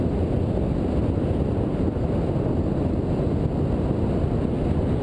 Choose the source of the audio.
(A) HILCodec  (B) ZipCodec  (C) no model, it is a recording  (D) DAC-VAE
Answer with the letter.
C